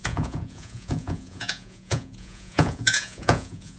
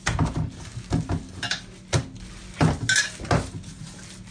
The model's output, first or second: first